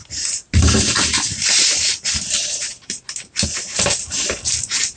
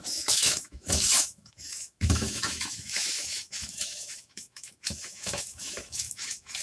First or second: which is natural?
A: first